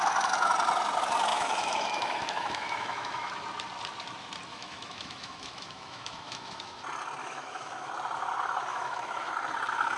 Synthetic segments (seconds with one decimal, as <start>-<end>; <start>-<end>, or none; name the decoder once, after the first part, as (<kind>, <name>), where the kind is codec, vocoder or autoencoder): 1.3-3.3 (autoencoder, DAC-VAE); 4.5-6.8; 7.2-7.9; 8.7-9.3